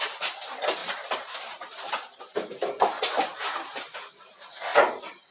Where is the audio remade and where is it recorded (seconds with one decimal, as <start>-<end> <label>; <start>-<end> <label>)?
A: 0.0-4.7 remade; 4.7-5.3 recorded